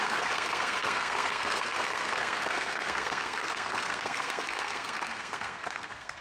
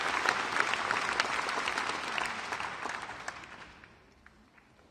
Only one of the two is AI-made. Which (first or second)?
first